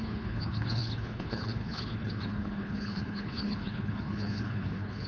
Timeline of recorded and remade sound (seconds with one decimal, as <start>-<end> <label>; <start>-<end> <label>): 0.0-5.1 remade

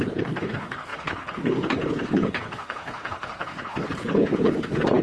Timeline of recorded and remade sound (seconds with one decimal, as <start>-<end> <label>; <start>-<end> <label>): 0.0-5.0 remade